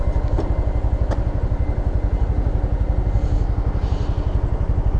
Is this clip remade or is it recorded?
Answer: recorded